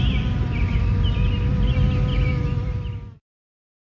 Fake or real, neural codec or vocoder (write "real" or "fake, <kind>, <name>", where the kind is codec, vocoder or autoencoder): real